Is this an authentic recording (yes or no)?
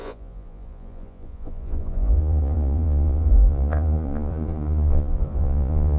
no